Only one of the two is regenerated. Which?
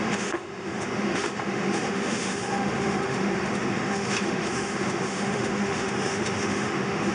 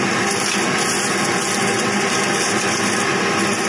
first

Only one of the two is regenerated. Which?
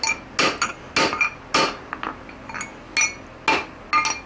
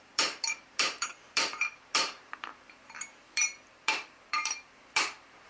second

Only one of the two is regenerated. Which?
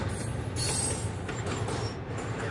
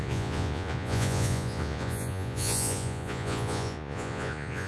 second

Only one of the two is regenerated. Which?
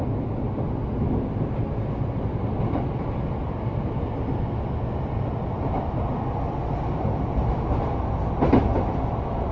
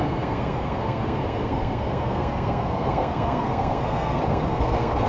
second